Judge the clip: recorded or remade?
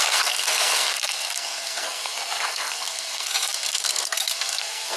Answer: remade